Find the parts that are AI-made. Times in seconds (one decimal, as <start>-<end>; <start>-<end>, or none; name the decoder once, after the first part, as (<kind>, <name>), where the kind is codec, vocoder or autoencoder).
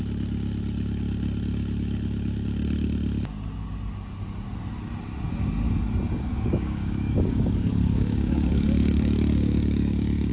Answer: 6.3-10.3 (codec, DAC)